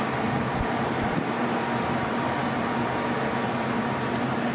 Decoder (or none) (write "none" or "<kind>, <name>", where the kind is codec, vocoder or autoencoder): none